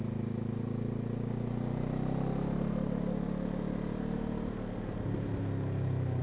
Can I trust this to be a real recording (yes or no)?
yes